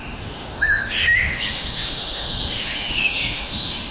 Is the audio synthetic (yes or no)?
yes